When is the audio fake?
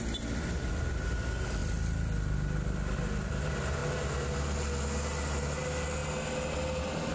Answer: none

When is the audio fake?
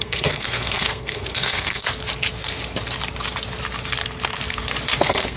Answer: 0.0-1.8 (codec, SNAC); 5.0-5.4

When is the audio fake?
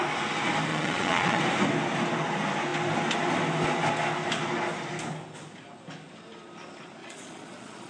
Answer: 0.7-1.4 (vocoder, Vocos); 7.0-7.9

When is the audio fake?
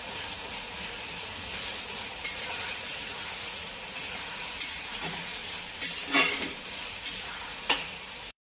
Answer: 0.0-5.4 (vocoder, Vocos); 6.7-8.4